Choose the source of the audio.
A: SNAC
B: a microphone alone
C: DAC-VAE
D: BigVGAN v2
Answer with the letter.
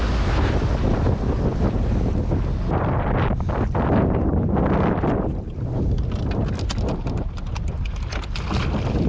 B